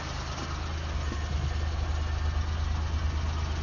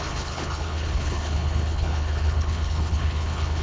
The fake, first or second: second